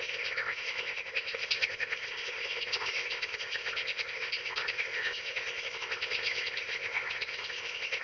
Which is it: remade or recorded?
remade